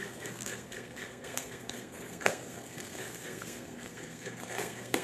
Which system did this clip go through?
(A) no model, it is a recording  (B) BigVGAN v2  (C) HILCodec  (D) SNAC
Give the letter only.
D